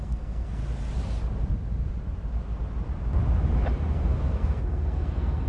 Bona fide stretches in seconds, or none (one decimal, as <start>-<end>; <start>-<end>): 0.6-3.9